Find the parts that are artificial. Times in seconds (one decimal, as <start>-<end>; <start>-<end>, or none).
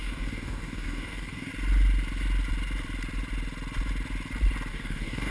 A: 0.0-1.5; 4.7-5.3